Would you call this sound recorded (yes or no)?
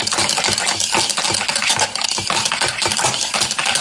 yes